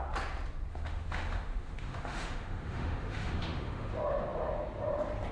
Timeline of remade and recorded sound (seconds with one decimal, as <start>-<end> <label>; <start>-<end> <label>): 0.0-0.7 recorded; 0.7-3.9 remade; 3.9-5.3 recorded